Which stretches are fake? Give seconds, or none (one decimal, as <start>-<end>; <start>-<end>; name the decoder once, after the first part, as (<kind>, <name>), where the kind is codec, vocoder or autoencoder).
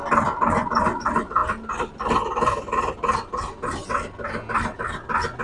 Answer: none